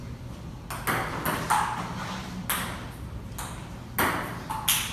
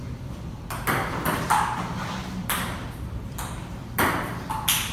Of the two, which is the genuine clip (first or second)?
first